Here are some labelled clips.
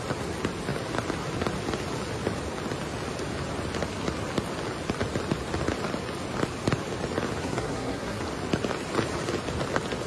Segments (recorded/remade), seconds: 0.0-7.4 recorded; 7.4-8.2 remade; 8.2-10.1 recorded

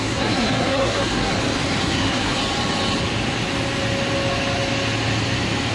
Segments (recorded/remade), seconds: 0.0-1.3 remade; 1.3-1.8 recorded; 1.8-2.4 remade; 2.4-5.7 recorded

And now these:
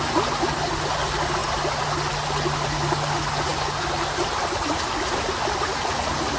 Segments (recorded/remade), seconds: 0.0-6.4 recorded

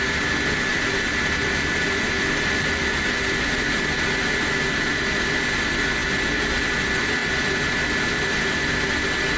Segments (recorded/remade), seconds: 0.0-9.4 recorded